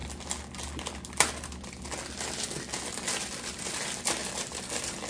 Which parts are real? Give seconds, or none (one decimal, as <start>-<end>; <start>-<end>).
0.0-5.1